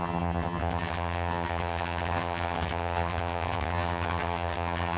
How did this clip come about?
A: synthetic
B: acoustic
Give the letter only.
A